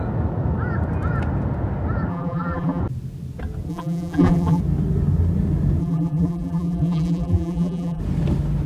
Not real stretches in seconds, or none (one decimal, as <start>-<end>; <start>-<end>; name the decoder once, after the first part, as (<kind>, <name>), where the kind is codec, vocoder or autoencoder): 2.1-2.8 (vocoder, BigVGAN v2); 3.7-4.6; 5.8-8.0

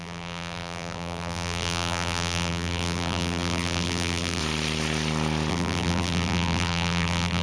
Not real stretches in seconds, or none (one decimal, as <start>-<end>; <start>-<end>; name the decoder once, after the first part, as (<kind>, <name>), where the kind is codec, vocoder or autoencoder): 0.0-4.4 (vocoder, BigVGAN v2); 5.5-7.4

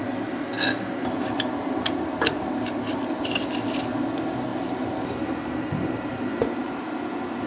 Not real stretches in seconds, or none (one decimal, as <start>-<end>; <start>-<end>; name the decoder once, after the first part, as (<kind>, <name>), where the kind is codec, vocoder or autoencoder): 4.5-6.7 (vocoder, BigVGAN v2)

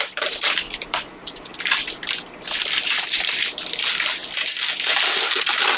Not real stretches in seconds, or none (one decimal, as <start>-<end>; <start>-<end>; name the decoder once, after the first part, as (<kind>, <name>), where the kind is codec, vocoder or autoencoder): 0.0-1.5 (vocoder, BigVGAN v2); 2.8-4.2; 4.8-5.8

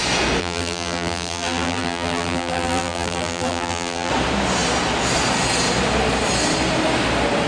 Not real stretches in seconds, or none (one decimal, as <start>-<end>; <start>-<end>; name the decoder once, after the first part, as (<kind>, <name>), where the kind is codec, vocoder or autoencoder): 0.4-4.1 (vocoder, BigVGAN v2)

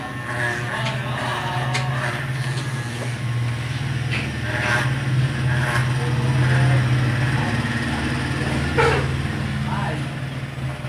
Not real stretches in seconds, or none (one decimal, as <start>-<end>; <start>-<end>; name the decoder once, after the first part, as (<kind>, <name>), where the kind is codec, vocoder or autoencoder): none

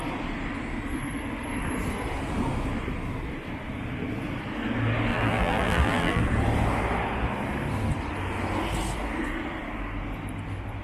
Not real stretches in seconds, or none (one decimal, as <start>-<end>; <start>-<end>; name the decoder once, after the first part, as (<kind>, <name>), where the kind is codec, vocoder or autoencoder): 5.1-6.2 (vocoder, BigVGAN v2)